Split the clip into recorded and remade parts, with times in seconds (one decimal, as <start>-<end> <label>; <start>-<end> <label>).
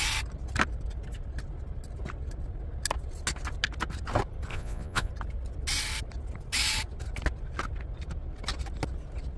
0.0-4.5 recorded; 4.5-5.1 remade; 5.1-9.4 recorded